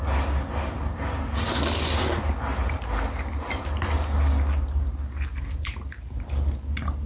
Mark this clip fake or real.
real